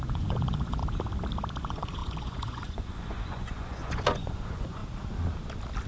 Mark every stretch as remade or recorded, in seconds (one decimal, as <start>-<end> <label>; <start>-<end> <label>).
0.0-0.8 remade; 0.8-1.6 recorded; 1.6-4.8 remade; 4.8-5.9 recorded